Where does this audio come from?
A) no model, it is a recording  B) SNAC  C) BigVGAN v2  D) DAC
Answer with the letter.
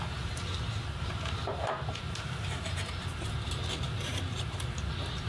C